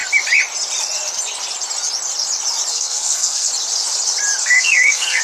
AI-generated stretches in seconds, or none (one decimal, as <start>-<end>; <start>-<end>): 2.7-3.5; 4.4-5.2